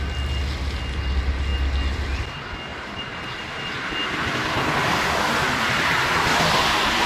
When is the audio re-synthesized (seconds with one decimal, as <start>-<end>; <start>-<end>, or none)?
2.7-3.2